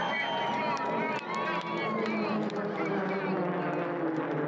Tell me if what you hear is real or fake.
real